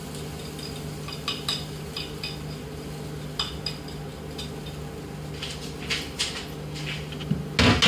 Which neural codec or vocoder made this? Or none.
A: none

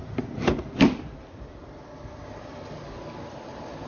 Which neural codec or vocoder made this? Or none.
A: none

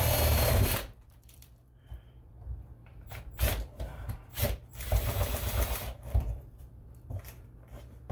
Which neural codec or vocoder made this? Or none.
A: vocoder, BigVGAN v2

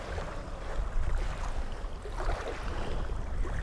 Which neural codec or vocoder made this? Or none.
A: vocoder, BigVGAN v2